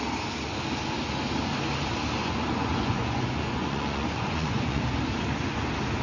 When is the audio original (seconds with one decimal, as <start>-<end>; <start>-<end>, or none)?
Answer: 0.0-2.2; 4.8-6.0